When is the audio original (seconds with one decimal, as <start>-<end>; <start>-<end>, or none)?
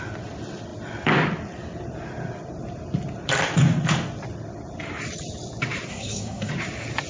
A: 0.0-5.9; 6.5-7.1